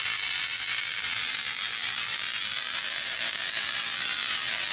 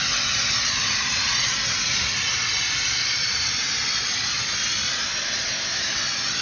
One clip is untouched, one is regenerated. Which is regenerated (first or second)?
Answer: first